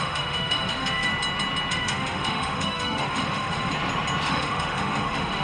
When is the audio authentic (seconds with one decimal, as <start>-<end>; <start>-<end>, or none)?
1.1-1.7; 3.7-4.3